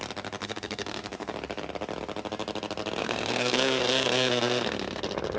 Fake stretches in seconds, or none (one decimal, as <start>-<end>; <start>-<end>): 0.4-1.3; 3.0-5.0